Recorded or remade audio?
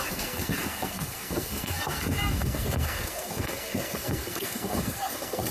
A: remade